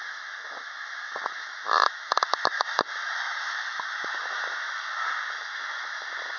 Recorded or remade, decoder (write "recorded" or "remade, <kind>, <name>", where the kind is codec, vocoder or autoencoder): remade, autoencoder, DAC-VAE